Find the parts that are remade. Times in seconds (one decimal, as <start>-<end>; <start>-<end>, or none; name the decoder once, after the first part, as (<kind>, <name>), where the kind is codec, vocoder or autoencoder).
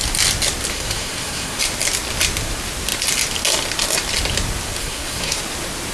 0.7-1.6 (codec, SNAC); 4.8-5.4